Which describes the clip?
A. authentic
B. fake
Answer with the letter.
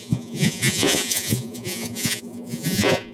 B